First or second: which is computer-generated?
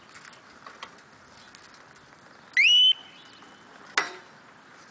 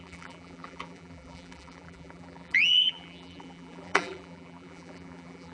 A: second